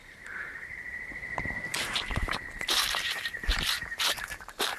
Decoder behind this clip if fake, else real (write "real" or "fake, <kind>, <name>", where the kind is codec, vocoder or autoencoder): fake, vocoder, BigVGAN v2